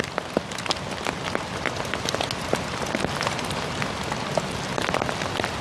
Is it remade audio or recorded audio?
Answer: recorded